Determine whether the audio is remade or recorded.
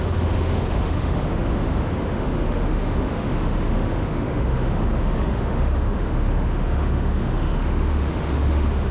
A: remade